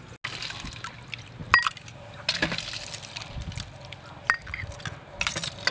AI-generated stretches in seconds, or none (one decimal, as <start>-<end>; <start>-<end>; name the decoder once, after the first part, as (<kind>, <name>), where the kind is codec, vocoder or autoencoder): none